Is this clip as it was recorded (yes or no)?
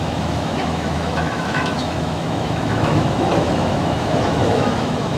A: no